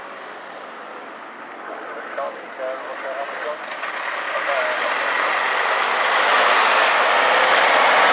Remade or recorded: recorded